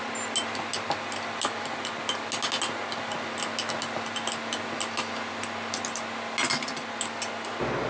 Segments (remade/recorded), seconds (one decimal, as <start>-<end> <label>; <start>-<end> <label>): 0.0-7.9 recorded